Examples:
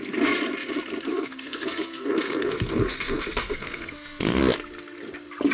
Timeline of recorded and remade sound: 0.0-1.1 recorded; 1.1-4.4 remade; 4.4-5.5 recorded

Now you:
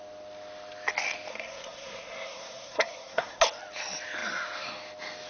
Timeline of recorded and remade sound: 0.0-1.3 recorded; 1.3-3.4 remade; 3.4-5.3 recorded

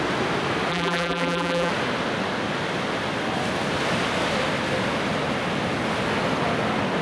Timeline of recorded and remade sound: 0.0-0.7 recorded; 0.7-1.7 remade; 1.7-7.0 recorded

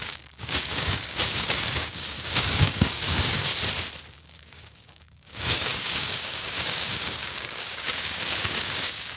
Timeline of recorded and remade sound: 0.0-3.5 remade; 3.5-4.1 recorded; 4.1-9.2 remade

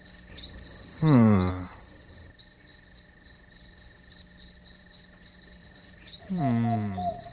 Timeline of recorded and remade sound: 0.0-0.9 recorded; 0.9-1.5 remade; 1.5-5.6 recorded; 5.6-6.4 remade; 6.4-7.3 recorded

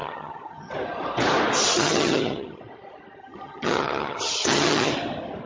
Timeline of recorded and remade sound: 0.0-0.7 remade; 0.7-1.7 recorded; 1.7-2.6 remade; 2.6-3.2 recorded; 3.2-4.9 remade; 4.9-5.5 recorded

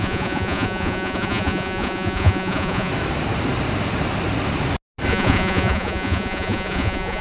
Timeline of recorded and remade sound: 0.0-2.9 remade; 2.9-5.1 recorded; 5.1-7.2 remade